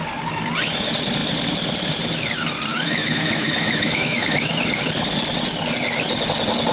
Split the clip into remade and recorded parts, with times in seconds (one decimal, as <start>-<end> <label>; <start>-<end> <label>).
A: 0.0-2.7 recorded; 2.7-4.6 remade; 4.6-6.7 recorded